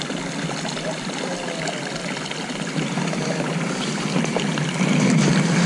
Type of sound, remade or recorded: recorded